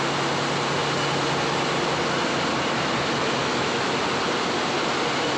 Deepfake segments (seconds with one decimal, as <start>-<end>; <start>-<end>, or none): 3.4-3.9